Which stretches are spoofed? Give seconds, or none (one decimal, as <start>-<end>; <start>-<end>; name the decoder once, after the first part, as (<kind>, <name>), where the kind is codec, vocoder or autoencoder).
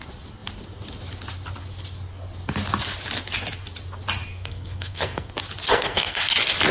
4.3-5.3 (codec, SNAC); 5.7-6.2